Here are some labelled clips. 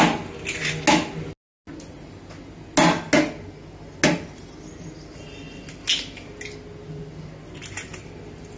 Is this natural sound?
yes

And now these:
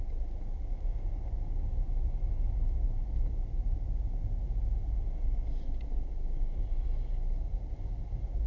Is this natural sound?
yes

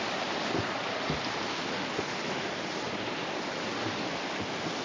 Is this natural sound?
yes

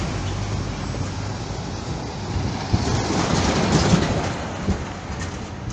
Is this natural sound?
yes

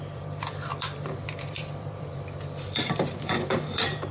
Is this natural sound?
no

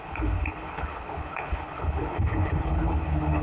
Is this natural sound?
no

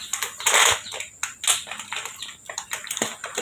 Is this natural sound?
yes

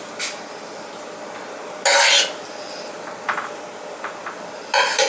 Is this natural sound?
yes